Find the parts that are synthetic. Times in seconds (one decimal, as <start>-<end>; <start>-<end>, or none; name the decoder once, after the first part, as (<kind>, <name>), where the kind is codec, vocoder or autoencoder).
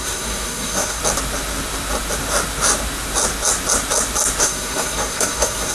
0.0-1.0 (codec, SNAC); 4.4-5.7